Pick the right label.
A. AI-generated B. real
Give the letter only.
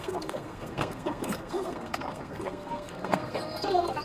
A